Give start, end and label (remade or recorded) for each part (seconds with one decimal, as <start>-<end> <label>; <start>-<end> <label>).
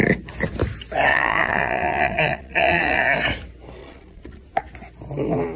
0.0-1.1 recorded; 1.1-3.0 remade; 3.0-3.8 recorded; 3.8-4.6 remade; 4.6-5.6 recorded